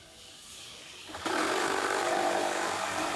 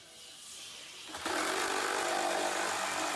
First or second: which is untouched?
second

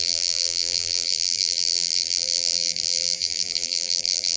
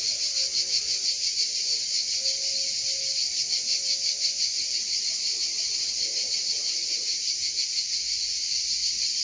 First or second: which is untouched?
second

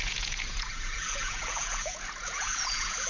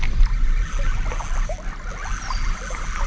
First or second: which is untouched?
second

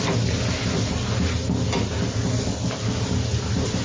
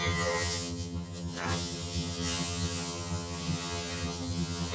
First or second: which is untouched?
first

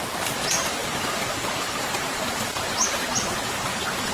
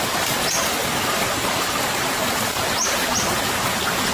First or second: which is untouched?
second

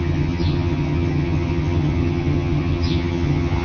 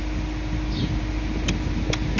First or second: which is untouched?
second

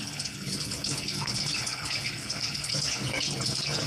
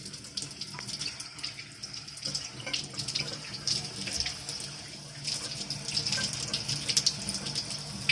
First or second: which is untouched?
second